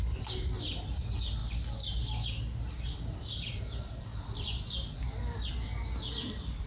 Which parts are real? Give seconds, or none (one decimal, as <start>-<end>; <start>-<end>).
0.0-6.7